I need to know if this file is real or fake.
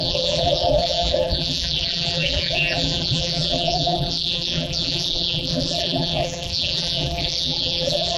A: fake